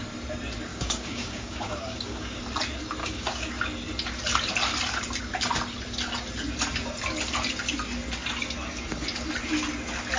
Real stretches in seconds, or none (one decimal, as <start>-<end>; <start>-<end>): 0.0-0.7; 2.4-3.0; 3.5-10.2